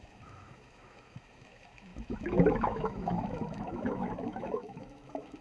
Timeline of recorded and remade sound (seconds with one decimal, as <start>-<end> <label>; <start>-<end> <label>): 0.0-5.4 remade